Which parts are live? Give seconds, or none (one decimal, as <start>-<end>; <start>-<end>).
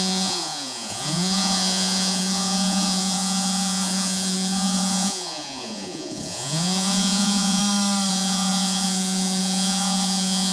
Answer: 7.6-8.1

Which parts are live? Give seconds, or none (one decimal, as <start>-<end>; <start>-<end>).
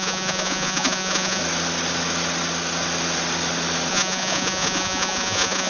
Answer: 1.4-3.9